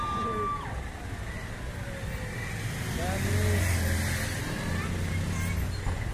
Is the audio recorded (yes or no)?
yes